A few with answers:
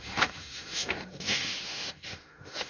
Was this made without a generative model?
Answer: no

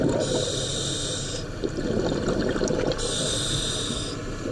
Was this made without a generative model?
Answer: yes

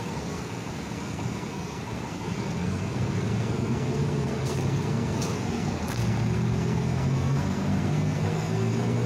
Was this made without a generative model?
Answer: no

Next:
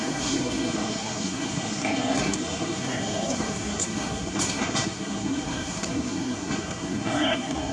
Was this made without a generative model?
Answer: no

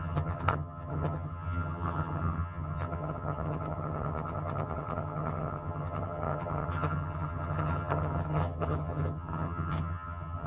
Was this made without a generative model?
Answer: no